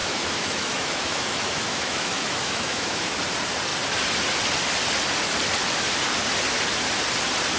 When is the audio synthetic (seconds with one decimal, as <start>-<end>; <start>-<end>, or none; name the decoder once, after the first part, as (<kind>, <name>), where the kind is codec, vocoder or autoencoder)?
0.0-3.2 (autoencoder, DAC-VAE)